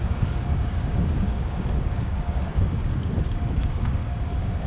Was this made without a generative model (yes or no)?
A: no